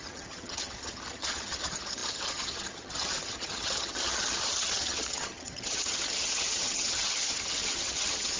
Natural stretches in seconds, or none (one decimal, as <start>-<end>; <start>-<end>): none